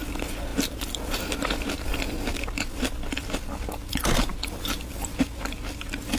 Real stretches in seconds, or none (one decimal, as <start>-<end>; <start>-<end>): 0.0-6.2